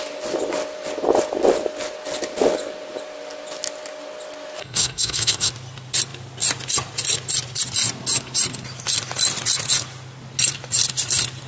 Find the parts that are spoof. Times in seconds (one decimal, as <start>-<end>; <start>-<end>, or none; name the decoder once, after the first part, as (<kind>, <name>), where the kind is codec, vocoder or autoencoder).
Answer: 4.6-5.5 (codec, SNAC)